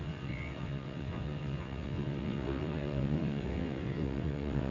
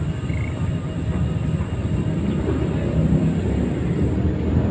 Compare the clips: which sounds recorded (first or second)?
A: second